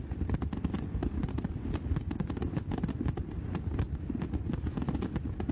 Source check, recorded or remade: recorded